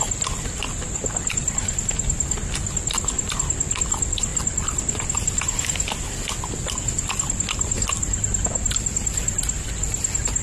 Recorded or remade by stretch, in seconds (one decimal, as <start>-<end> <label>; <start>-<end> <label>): 0.0-10.4 recorded

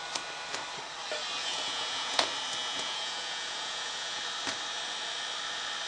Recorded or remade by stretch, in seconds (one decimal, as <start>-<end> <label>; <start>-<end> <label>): 0.0-1.4 recorded; 1.4-2.2 remade; 2.2-2.6 recorded; 2.6-4.2 remade; 4.2-5.9 recorded

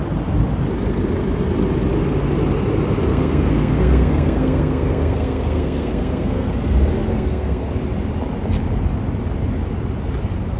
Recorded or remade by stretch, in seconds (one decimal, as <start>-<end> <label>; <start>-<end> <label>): 0.0-3.1 recorded; 3.1-6.5 remade; 6.5-7.0 recorded; 7.0-7.7 remade; 7.7-10.6 recorded

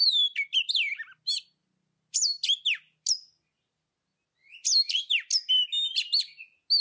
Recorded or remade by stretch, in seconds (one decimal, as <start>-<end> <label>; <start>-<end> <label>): 0.0-6.8 recorded